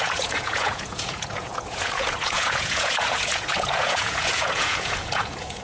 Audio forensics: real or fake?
fake